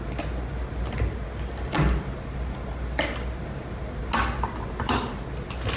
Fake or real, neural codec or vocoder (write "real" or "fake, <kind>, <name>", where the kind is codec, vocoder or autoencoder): real